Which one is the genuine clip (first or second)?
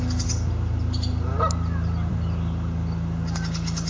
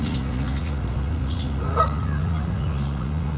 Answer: first